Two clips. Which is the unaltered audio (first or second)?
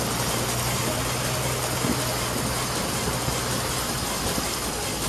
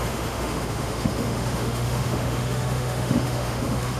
first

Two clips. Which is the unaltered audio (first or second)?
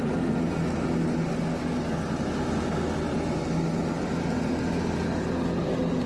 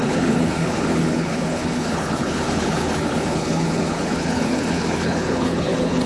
first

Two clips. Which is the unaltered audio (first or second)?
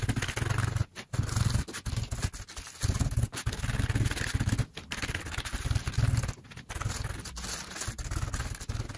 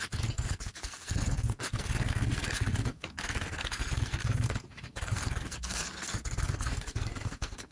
first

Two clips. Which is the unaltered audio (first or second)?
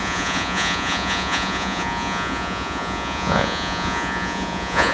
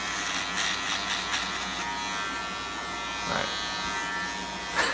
second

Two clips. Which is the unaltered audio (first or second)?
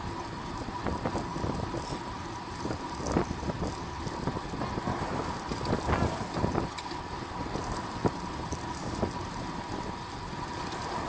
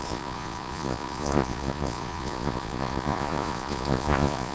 first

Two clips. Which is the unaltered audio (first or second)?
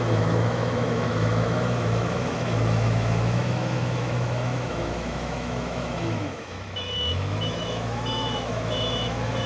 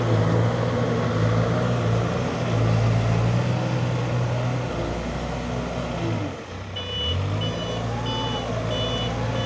second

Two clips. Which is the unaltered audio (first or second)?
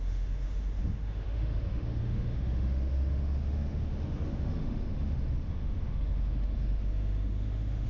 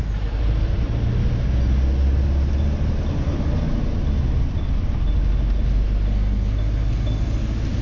second